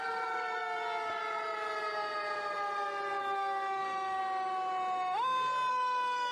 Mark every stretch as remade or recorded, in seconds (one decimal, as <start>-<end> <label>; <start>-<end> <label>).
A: 0.0-1.2 remade; 1.2-3.2 recorded; 3.2-4.2 remade; 4.2-5.7 recorded; 5.7-6.3 remade